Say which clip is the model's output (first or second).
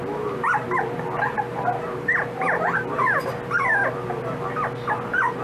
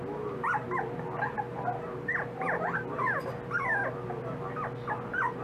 first